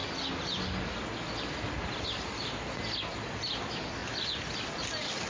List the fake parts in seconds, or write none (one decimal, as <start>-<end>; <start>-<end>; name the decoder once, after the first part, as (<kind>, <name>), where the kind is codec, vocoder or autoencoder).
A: 0.0-2.8 (vocoder, BigVGAN v2); 4.0-5.3